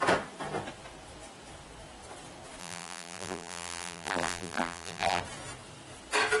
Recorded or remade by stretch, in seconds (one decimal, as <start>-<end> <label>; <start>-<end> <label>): 0.0-2.6 recorded; 2.6-5.2 remade; 5.2-6.4 recorded